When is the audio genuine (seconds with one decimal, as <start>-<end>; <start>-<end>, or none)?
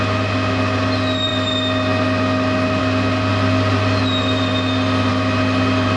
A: 0.0-6.0